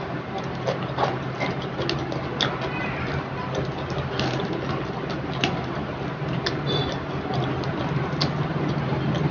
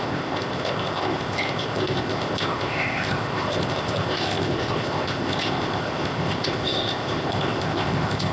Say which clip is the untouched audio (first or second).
first